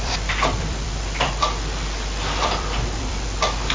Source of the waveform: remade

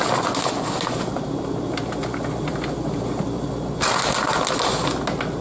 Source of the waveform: recorded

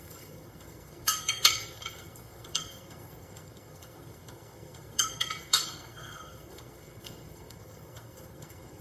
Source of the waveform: remade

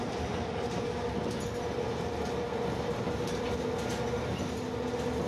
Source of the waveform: recorded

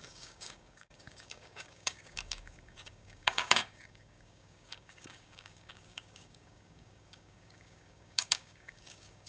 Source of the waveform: remade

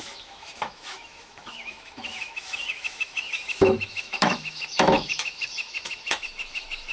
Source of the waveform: remade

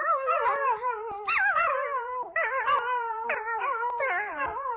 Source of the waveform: remade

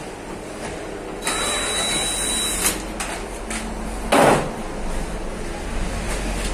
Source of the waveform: recorded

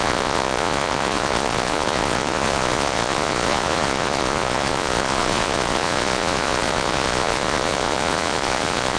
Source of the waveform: remade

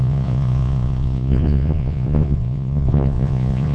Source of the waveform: remade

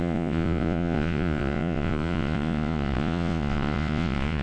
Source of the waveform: remade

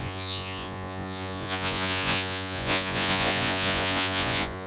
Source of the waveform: remade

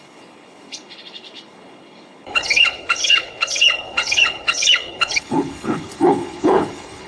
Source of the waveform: remade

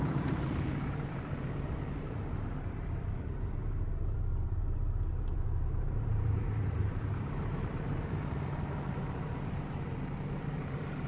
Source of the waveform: remade